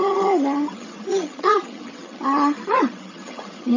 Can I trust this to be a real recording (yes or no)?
no